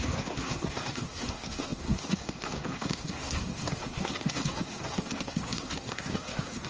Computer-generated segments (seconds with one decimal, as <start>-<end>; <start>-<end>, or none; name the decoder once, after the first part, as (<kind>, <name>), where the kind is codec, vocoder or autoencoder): 0.0-6.7 (codec, SNAC)